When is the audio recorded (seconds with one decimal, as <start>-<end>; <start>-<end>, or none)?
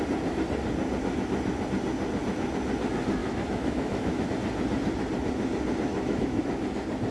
0.0-3.2; 4.3-5.9; 6.4-7.1